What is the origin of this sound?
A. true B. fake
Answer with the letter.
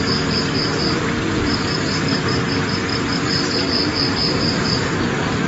A